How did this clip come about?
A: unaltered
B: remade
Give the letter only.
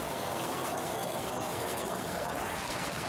B